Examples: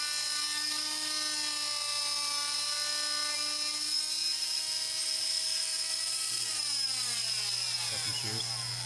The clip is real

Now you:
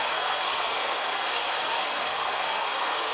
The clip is fake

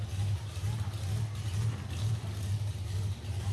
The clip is real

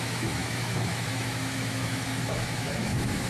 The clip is fake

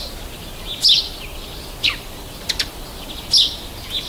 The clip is real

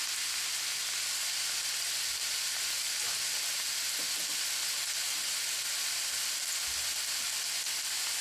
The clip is real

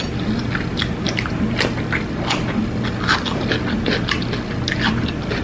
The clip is real